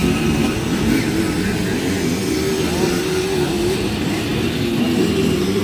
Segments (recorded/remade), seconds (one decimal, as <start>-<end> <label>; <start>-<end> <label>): 0.0-1.2 remade; 1.2-4.3 recorded; 4.3-5.6 remade